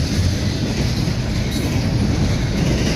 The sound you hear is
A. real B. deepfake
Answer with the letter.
A